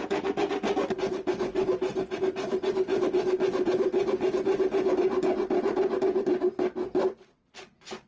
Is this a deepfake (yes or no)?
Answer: no